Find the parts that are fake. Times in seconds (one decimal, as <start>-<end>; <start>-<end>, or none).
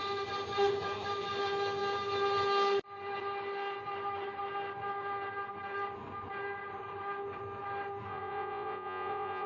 8.1-9.5